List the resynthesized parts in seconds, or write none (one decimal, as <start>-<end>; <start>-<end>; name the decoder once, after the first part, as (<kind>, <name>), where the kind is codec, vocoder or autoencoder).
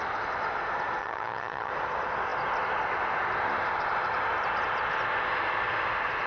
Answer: 1.0-1.7 (vocoder, HiFi-GAN)